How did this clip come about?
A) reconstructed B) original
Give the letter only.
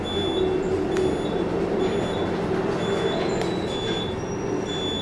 B